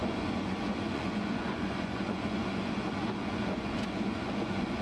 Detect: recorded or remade remade